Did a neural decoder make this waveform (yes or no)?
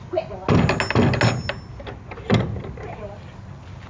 no